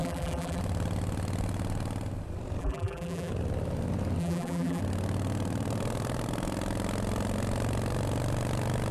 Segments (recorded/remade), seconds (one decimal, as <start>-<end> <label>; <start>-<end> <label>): 0.0-0.6 remade; 0.6-2.6 recorded; 2.6-3.3 remade; 3.3-4.2 recorded; 4.2-4.8 remade; 4.8-8.9 recorded